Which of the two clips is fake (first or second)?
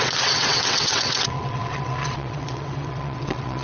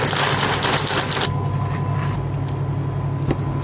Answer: first